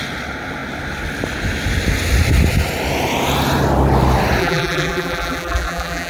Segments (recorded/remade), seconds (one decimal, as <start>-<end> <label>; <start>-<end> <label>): 0.0-4.4 recorded; 4.4-6.1 remade